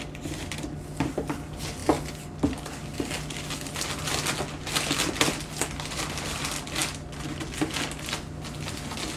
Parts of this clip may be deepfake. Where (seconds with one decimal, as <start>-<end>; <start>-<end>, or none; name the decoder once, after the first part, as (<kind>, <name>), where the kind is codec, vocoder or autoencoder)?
none